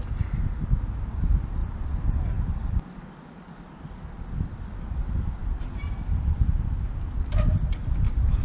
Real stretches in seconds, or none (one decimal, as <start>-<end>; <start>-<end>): 0.0-8.4